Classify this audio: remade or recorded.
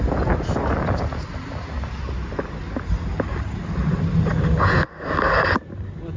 recorded